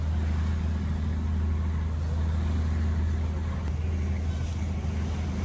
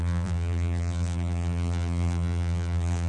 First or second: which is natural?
first